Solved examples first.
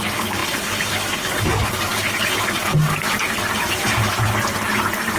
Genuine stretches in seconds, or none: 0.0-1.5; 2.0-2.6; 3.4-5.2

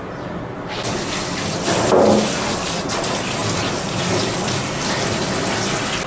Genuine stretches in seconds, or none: 0.0-3.4; 5.3-6.1

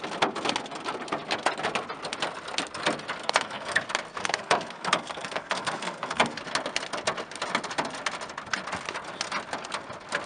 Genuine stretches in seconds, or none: 0.0-3.2; 3.8-4.2; 6.4-10.3

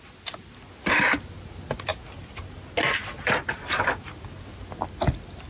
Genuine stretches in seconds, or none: 0.0-5.5

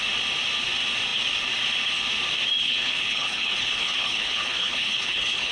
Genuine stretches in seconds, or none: 0.0-2.6